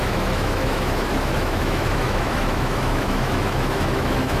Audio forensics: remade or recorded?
remade